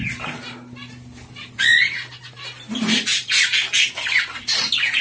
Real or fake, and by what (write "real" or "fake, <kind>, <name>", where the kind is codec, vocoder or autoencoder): real